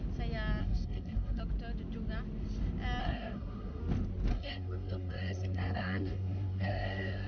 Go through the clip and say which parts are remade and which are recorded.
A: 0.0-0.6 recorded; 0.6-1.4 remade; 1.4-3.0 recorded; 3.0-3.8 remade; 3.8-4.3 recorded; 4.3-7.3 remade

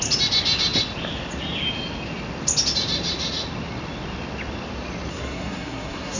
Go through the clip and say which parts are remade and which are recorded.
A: 0.0-5.1 recorded; 5.1-6.2 remade

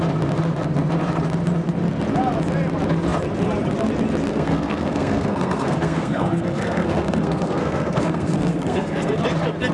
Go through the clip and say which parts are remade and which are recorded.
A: 0.0-4.3 recorded; 4.3-9.2 remade; 9.2-9.7 recorded

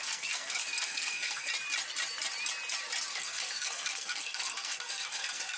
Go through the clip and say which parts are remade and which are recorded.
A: 0.0-1.5 remade; 1.5-3.1 recorded; 3.1-5.6 remade

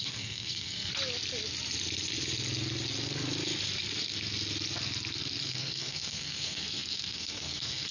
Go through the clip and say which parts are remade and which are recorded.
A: 0.0-0.9 remade; 0.9-5.4 recorded; 5.4-7.9 remade